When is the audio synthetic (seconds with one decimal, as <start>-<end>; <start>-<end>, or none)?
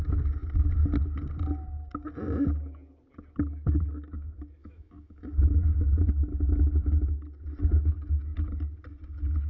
4.6-5.4